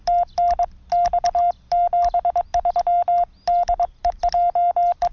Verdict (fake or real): real